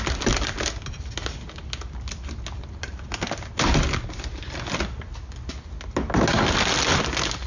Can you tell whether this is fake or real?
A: real